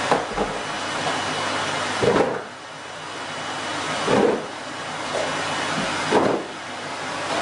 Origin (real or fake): real